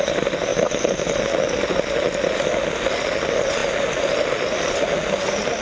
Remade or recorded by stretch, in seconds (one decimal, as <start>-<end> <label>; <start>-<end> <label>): 0.0-5.6 recorded